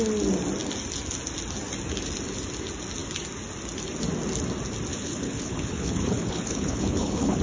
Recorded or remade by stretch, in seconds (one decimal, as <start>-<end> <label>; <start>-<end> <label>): 0.0-4.9 recorded; 4.9-7.4 remade